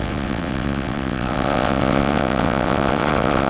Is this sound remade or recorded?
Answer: remade